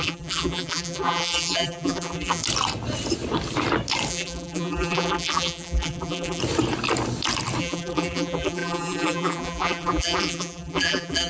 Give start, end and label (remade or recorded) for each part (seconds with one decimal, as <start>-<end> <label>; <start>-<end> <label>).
0.0-2.4 remade; 2.4-4.1 recorded; 4.1-6.4 remade; 6.4-7.6 recorded; 7.6-11.3 remade